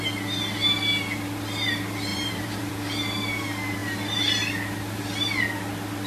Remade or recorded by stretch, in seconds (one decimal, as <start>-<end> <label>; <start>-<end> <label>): 0.0-2.1 recorded; 2.1-2.7 remade; 2.7-6.1 recorded